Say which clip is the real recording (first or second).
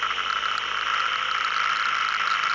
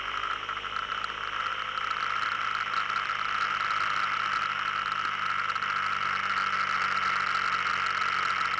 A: second